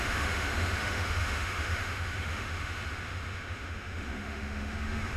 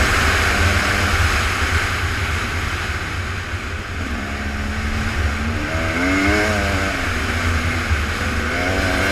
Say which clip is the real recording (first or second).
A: second